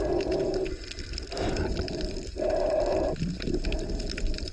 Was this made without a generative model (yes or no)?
yes